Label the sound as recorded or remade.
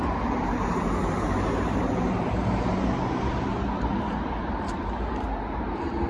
remade